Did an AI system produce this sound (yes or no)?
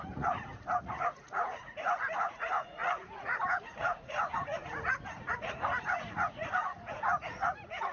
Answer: yes